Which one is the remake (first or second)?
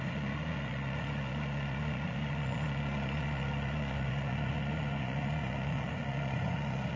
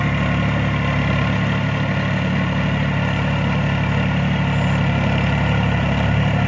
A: first